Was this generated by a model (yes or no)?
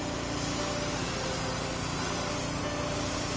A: no